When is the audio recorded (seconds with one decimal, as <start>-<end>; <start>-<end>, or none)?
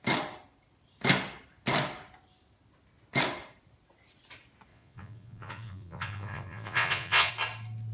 0.0-4.7; 7.3-7.9